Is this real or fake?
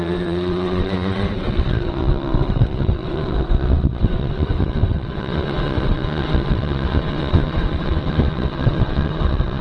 fake